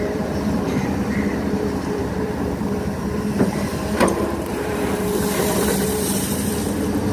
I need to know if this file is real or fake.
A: fake